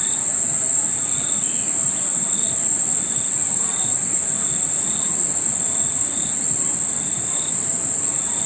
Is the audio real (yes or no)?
no